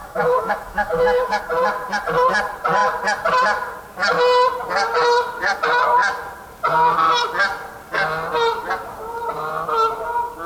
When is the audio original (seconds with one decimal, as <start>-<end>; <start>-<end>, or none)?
1.4-10.5